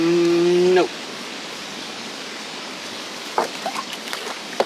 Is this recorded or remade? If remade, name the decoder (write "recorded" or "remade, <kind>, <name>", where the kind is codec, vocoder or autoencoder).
remade, codec, DAC